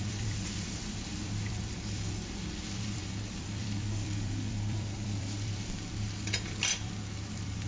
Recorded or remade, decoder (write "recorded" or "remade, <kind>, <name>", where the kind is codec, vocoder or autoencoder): remade, vocoder, BigVGAN v2